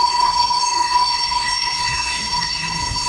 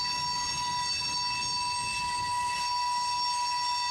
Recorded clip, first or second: second